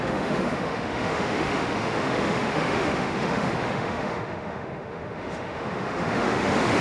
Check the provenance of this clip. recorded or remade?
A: remade